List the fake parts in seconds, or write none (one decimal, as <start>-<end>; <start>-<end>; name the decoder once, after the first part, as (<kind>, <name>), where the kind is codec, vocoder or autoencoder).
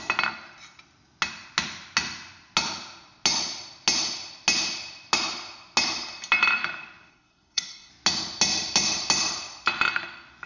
7.1-7.9 (codec, SNAC)